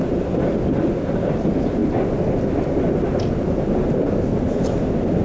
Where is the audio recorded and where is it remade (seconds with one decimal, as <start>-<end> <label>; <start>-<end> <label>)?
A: 0.0-5.2 recorded

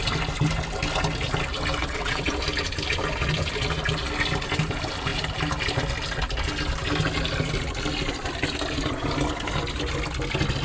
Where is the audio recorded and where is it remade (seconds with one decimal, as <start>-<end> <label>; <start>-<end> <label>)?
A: 0.0-1.8 recorded; 1.8-2.3 remade; 2.3-10.6 recorded

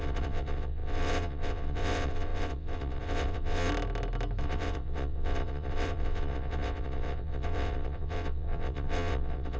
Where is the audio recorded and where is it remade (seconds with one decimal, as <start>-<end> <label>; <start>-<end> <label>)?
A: 0.0-3.7 remade; 3.7-4.4 recorded; 4.4-9.6 remade

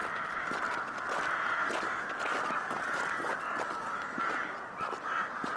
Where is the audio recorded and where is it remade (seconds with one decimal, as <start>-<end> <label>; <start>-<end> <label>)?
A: 0.0-5.6 recorded

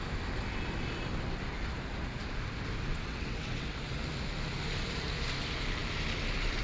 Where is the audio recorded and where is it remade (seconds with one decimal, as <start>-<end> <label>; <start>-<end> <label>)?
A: 0.0-2.9 recorded; 2.9-3.8 remade; 3.8-6.6 recorded

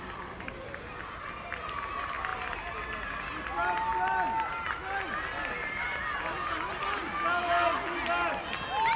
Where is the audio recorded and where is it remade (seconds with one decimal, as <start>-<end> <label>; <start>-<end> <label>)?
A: 0.0-9.0 recorded

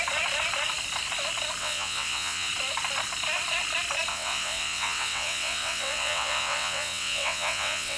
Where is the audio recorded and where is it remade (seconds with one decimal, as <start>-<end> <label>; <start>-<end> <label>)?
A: 0.0-1.6 recorded; 1.6-2.5 remade; 2.5-4.1 recorded; 4.1-8.0 remade

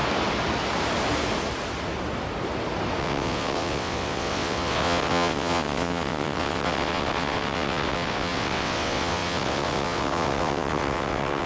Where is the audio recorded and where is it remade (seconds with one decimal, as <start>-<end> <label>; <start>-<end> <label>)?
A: 0.0-3.0 recorded; 3.0-11.5 remade